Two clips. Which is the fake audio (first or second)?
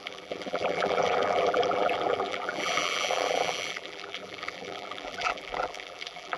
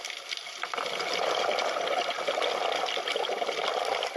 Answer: first